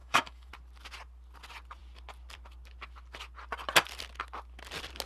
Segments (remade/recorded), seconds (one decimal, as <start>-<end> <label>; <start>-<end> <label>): 0.0-0.5 remade; 0.5-5.1 recorded